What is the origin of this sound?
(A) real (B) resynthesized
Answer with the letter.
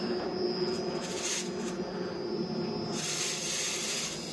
A